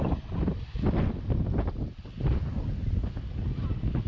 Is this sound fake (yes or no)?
no